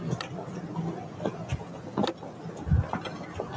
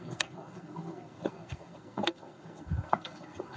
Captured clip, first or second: first